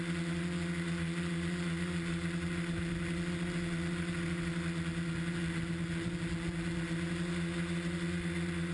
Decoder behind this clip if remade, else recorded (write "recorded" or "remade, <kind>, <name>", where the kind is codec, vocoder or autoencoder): recorded